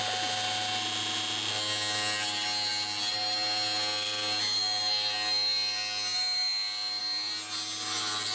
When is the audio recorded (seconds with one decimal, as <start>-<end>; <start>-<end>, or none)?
0.0-8.3